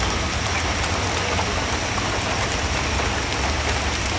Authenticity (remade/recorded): recorded